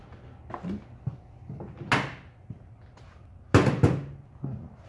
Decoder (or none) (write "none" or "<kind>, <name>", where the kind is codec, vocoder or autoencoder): none